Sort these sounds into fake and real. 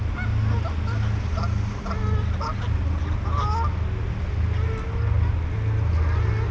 real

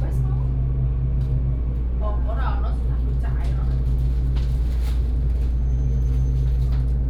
real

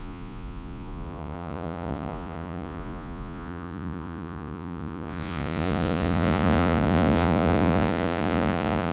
fake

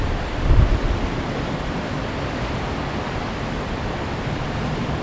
real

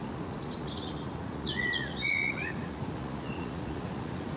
fake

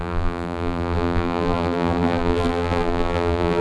fake